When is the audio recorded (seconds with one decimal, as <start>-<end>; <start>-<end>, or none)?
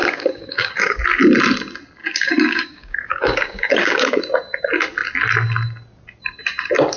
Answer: 1.0-2.0; 4.2-7.0